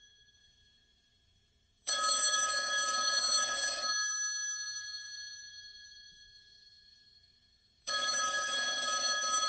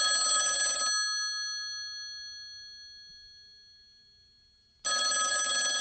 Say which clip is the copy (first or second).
first